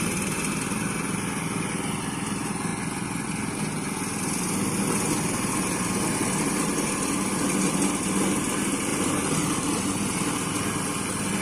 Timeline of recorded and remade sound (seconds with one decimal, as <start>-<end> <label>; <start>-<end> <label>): 0.0-8.9 recorded; 8.9-9.8 remade; 9.8-11.4 recorded